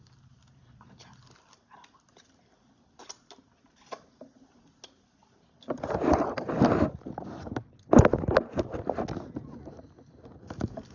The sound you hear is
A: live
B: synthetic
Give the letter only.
A